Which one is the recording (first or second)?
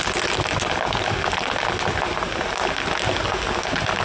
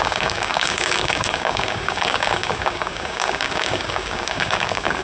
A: first